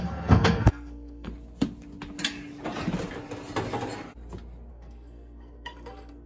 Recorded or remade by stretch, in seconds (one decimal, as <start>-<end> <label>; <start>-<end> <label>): 0.0-1.3 remade; 1.3-4.7 recorded; 4.7-6.3 remade